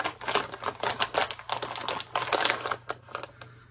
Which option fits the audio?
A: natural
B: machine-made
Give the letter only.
A